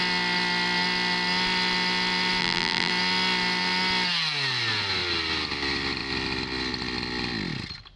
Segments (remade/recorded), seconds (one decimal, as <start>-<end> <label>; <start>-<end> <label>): 0.0-2.4 recorded; 2.4-2.9 remade; 2.9-8.0 recorded